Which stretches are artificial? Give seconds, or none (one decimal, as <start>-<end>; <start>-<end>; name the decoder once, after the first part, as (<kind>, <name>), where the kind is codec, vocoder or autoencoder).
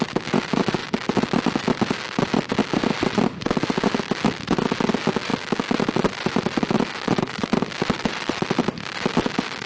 none